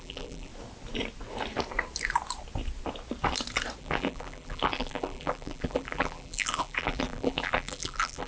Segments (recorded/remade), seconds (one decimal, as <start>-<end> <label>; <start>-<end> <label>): 0.0-0.5 remade; 0.5-3.8 recorded; 3.8-8.3 remade